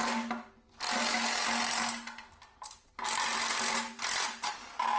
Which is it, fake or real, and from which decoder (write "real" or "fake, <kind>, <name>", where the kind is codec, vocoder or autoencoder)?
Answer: real